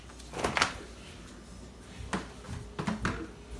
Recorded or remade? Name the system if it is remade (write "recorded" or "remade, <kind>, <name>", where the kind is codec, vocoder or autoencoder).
recorded